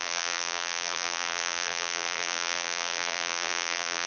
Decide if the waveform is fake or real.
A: fake